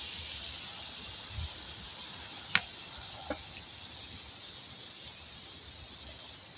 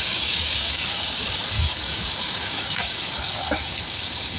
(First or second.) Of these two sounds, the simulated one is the second